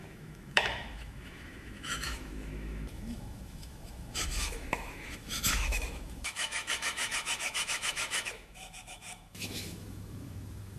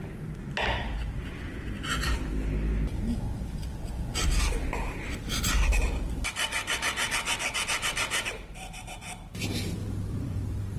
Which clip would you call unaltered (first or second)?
second